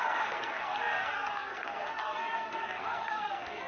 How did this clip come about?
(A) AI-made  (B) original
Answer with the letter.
A